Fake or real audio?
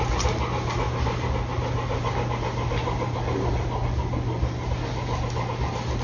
real